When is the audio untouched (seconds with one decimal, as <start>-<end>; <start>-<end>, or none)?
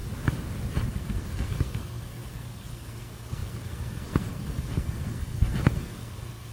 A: 0.0-0.9